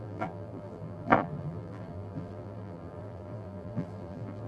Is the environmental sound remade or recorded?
remade